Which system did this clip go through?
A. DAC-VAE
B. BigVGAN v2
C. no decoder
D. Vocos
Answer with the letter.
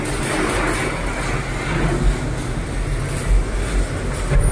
C